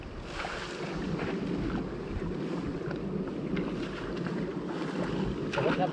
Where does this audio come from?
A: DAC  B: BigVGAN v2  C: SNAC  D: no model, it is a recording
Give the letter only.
D